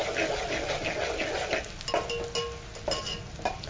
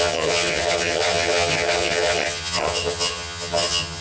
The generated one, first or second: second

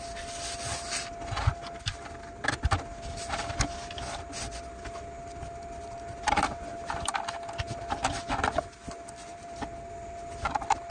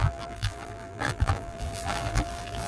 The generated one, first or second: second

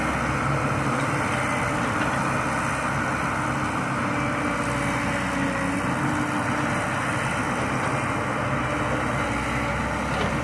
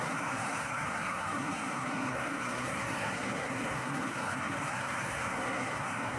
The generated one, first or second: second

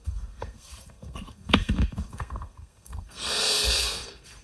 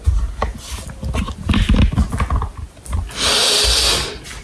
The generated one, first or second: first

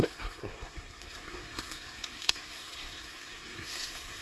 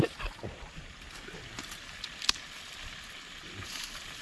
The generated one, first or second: first